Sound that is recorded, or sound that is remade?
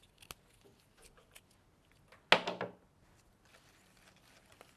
recorded